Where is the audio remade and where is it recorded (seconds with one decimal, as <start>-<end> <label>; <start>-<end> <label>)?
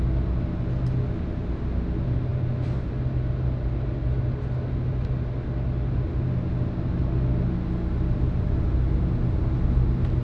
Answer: 0.0-10.2 recorded